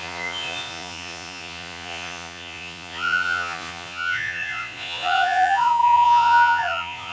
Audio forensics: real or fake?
fake